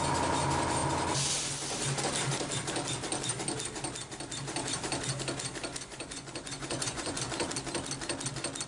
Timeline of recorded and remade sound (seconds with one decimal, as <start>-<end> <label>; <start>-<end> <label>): 0.0-5.7 recorded; 5.7-7.2 remade; 7.2-8.7 recorded